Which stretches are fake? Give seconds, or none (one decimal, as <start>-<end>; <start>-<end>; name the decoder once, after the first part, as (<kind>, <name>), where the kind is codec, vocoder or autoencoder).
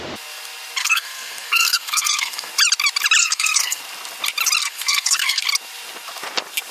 0.8-2.5 (codec, SNAC); 3.2-3.8; 4.6-5.4